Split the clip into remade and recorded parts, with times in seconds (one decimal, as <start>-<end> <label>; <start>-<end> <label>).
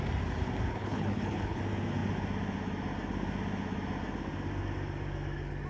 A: 0.0-0.7 recorded; 0.7-1.6 remade; 1.6-5.7 recorded